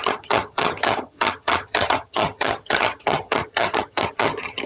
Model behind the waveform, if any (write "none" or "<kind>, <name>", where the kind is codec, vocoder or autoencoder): vocoder, HiFi-GAN